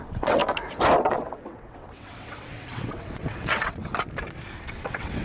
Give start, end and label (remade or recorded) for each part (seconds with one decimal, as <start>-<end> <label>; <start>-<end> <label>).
0.0-0.4 remade; 0.4-1.1 recorded; 1.1-3.9 remade; 3.9-4.6 recorded; 4.6-5.2 remade

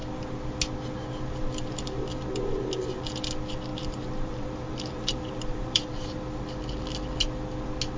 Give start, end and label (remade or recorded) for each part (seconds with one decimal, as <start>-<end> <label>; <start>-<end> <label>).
0.0-3.7 recorded; 3.7-6.2 remade; 6.2-8.0 recorded

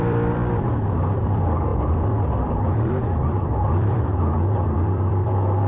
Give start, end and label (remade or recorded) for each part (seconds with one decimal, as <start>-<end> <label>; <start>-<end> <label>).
0.0-0.4 remade; 0.4-0.9 recorded; 0.9-5.7 remade

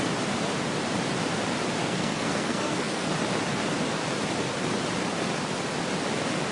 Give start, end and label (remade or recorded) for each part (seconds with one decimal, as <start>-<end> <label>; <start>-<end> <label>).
0.0-1.8 recorded; 1.8-3.1 remade; 3.1-6.5 recorded

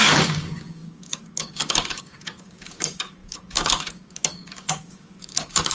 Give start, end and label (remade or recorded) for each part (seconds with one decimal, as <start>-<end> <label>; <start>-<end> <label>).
0.0-5.7 remade

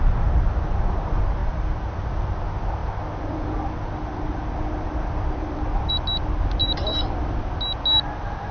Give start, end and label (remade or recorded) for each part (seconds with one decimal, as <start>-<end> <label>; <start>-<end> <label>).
0.0-8.5 recorded